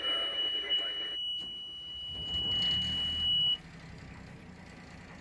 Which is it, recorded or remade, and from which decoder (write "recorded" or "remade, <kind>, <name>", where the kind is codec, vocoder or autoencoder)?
recorded